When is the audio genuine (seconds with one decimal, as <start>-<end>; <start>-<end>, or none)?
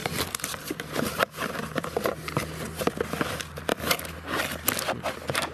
2.5-3.7; 4.4-5.5